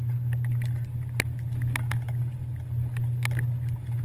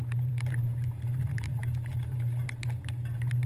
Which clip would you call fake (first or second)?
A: second